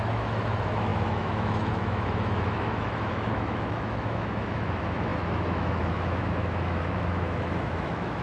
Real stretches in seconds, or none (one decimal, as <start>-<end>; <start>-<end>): none